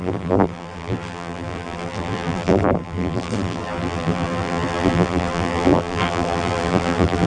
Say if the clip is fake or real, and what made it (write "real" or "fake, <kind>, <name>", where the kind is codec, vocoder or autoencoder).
fake, vocoder, BigVGAN v2